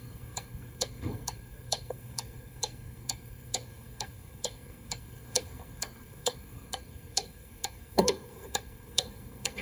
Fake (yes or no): yes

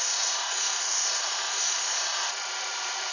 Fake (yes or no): yes